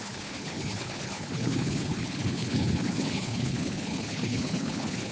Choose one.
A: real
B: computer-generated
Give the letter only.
B